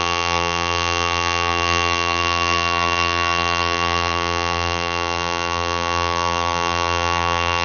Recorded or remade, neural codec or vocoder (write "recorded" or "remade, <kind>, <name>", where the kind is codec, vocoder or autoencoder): remade, vocoder, BigVGAN v2